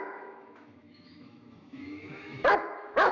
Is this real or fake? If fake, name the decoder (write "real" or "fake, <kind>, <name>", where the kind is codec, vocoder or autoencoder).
fake, autoencoder, DAC-VAE